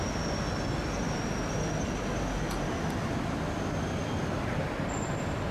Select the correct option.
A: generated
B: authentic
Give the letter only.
B